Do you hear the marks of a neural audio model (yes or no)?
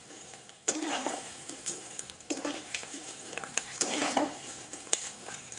yes